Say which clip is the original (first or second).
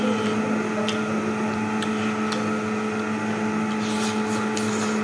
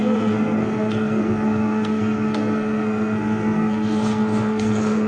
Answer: first